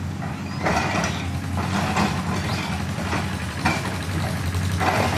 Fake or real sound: real